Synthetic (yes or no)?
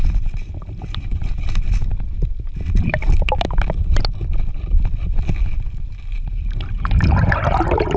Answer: no